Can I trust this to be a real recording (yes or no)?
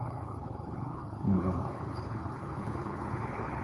no